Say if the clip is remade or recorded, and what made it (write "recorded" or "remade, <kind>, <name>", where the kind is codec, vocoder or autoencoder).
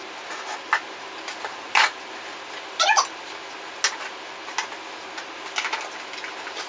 recorded